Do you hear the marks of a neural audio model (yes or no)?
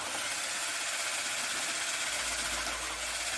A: no